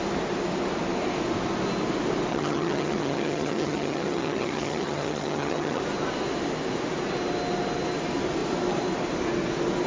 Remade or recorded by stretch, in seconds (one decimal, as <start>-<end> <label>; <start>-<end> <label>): 0.0-2.3 recorded; 2.3-5.8 remade; 5.8-9.9 recorded

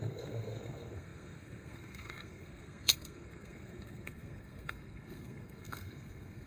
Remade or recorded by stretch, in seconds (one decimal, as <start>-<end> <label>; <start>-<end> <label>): 0.0-6.5 remade